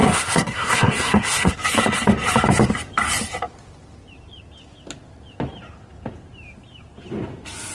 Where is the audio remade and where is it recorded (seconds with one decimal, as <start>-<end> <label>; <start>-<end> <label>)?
0.0-1.5 remade; 1.5-7.7 recorded